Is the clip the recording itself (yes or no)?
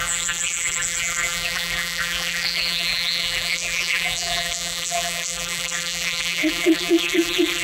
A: no